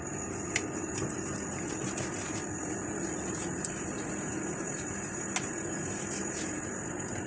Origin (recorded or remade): recorded